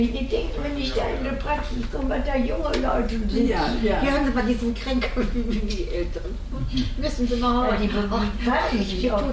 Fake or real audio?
real